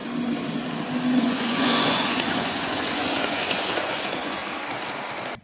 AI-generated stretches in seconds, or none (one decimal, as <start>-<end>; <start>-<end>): 1.2-4.4